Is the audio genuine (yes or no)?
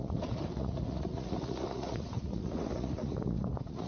no